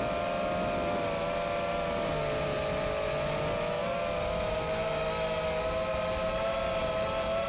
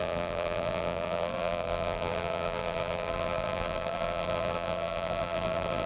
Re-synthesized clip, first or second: second